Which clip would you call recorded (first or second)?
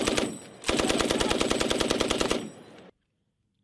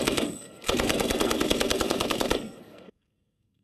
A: first